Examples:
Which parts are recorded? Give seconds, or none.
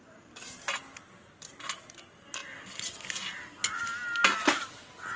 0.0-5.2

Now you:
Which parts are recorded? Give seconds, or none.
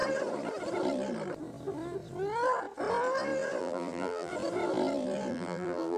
0.0-3.6; 4.3-5.3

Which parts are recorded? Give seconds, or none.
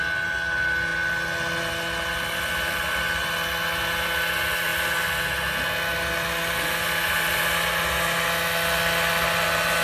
0.0-9.8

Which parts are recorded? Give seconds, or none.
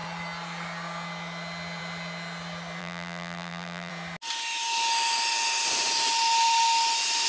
0.0-2.8; 3.9-7.3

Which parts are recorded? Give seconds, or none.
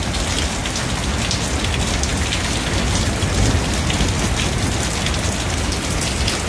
0.0-6.5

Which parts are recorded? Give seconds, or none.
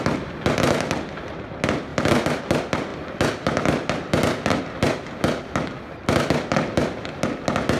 0.0-1.9; 2.4-7.8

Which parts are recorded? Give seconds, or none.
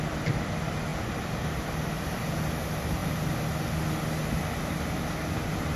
0.0-5.8